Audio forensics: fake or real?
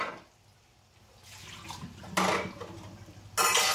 real